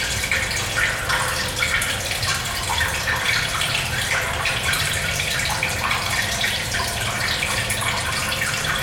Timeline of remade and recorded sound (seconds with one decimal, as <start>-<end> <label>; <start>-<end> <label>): 0.0-2.3 recorded; 2.3-3.0 remade; 3.0-3.5 recorded; 3.5-8.8 remade